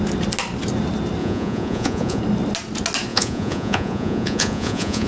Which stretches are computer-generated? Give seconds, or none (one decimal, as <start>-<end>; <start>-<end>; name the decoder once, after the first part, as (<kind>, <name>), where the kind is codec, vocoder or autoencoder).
1.2-2.2 (vocoder, Vocos); 3.1-5.1